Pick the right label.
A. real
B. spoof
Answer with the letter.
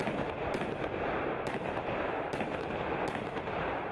A